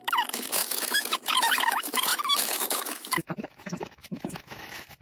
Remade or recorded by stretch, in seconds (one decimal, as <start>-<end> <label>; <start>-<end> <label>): 0.0-5.0 remade